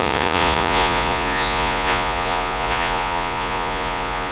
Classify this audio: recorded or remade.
remade